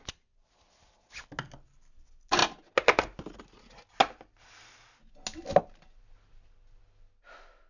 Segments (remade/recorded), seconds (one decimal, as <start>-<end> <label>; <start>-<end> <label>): 0.0-7.7 recorded

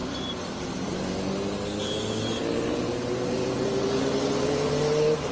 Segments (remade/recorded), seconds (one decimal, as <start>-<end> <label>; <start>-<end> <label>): 0.0-5.3 recorded

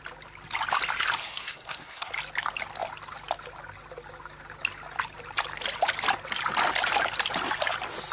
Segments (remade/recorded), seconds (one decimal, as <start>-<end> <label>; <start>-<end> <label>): 0.0-1.2 recorded; 1.2-2.1 remade; 2.1-8.1 recorded

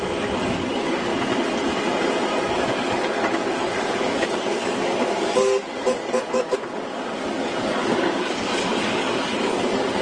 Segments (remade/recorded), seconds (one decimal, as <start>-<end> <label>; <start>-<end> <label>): 0.0-1.1 remade; 1.1-2.4 recorded; 2.4-10.0 remade

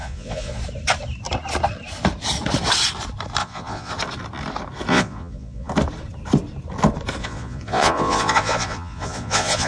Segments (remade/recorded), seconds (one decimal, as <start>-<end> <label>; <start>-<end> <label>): 0.0-0.6 remade; 0.6-3.4 recorded; 3.4-3.9 remade; 3.9-4.9 recorded; 4.9-5.7 remade; 5.7-7.2 recorded; 7.2-9.7 remade

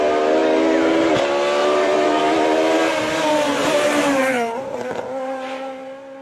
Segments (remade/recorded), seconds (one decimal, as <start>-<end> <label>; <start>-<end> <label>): 0.0-1.6 recorded; 1.6-2.2 remade; 2.2-3.6 recorded; 3.6-5.0 remade; 5.0-6.2 recorded

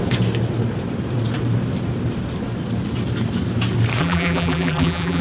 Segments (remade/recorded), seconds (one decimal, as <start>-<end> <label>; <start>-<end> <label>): 0.0-4.0 recorded; 4.0-5.2 remade